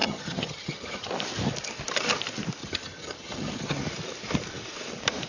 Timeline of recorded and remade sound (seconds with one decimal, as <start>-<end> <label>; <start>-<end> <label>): 0.0-1.1 remade; 1.1-2.6 recorded; 2.6-3.8 remade; 3.8-5.3 recorded

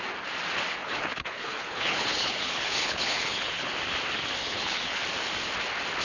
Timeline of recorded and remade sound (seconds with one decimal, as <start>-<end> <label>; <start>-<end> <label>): 0.0-0.8 recorded; 0.8-3.7 remade; 3.7-4.4 recorded; 4.4-5.0 remade; 5.0-6.0 recorded

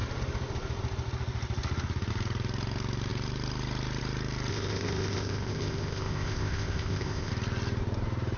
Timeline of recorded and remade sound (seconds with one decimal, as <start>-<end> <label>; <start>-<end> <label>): 0.0-4.5 recorded; 4.5-7.3 remade; 7.3-8.4 recorded

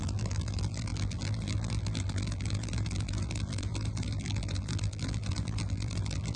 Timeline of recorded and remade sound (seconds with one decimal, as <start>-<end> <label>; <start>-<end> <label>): 0.0-6.4 remade

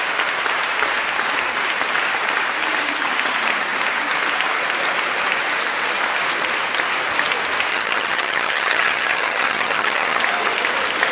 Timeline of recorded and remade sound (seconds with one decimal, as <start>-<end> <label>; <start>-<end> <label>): 0.0-7.7 recorded; 7.7-10.2 remade; 10.2-11.1 recorded

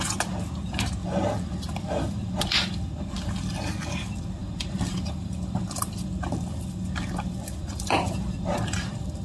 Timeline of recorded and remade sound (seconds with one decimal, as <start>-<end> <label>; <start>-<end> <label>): 0.0-1.0 recorded; 1.0-2.9 remade; 2.9-4.4 recorded; 4.4-6.1 remade; 6.1-7.6 recorded; 7.6-9.2 remade